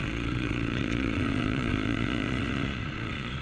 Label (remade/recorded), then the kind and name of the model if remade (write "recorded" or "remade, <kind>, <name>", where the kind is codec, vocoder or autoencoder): remade, vocoder, Vocos